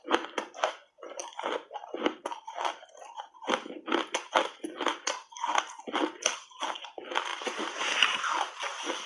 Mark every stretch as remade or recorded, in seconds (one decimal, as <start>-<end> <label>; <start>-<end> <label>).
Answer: 0.0-7.3 recorded; 7.3-8.2 remade; 8.2-9.1 recorded